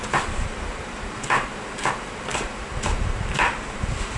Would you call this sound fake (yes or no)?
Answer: yes